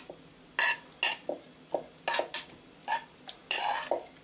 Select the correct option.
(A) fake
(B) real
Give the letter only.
B